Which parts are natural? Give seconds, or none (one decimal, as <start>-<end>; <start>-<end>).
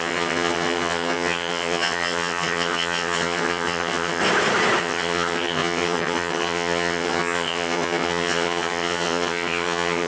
4.2-4.8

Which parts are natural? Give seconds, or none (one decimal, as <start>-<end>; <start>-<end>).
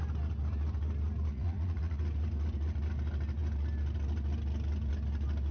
0.0-1.3; 2.0-5.5